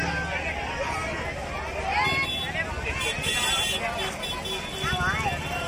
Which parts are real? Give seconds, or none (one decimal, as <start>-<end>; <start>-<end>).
0.0-5.7